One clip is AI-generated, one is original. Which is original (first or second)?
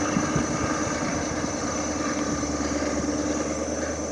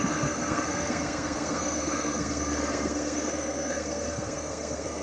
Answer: first